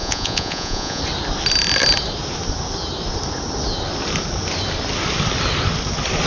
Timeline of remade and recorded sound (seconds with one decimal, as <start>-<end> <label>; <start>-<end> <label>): 0.0-1.0 remade; 1.0-6.3 recorded